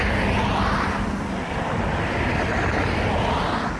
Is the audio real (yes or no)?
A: yes